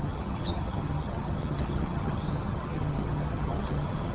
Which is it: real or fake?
fake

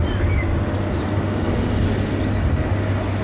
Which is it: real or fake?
real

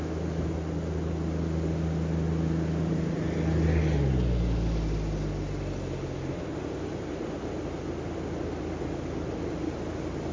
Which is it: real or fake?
real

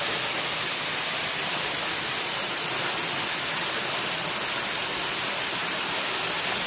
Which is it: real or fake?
real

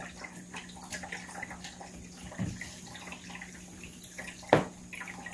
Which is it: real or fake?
real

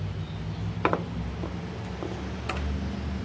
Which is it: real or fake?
real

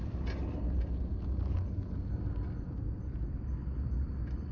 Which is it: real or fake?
real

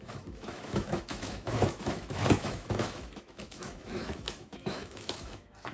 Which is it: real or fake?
fake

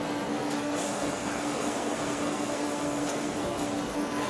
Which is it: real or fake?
fake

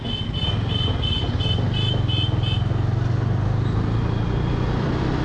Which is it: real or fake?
real